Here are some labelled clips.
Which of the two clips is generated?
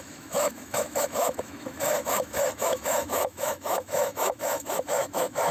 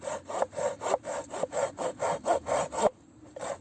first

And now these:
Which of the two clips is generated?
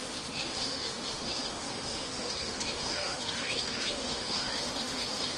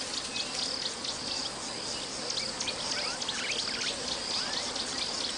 first